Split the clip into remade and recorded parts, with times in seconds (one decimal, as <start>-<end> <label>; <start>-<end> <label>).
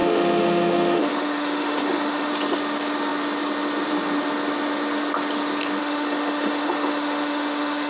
0.0-2.3 remade; 2.3-5.8 recorded; 5.8-7.9 remade